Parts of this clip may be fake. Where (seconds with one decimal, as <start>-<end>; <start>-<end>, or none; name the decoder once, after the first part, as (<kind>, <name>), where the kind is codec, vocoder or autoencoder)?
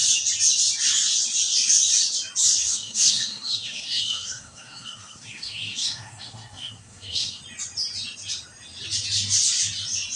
2.6-7.4 (codec, SNAC)